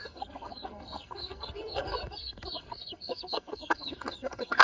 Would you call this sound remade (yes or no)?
yes